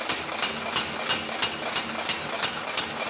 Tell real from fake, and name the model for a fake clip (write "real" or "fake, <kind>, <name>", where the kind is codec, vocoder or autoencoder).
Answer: real